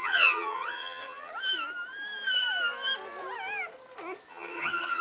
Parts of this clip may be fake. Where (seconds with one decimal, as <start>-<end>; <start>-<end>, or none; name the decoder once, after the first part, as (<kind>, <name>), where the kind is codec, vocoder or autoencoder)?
0.0-1.3 (vocoder, HiFi-GAN); 4.3-5.0